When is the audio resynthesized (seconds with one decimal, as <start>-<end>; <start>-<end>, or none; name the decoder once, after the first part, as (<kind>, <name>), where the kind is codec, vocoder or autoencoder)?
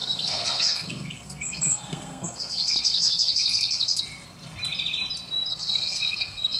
0.0-4.0 (codec, SNAC); 5.5-6.6